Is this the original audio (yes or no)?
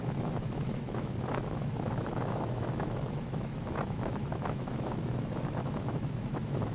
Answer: no